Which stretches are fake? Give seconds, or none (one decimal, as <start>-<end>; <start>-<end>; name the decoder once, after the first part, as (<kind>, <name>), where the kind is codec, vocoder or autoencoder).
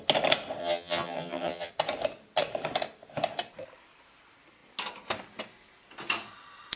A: 0.6-1.7 (vocoder, HiFi-GAN)